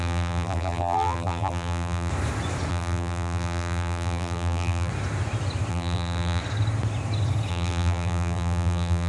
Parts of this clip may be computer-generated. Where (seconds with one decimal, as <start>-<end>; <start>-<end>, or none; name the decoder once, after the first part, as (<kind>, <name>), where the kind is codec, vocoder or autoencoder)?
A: 0.0-2.1 (vocoder, BigVGAN v2); 2.7-4.9; 5.7-6.4; 7.5-9.1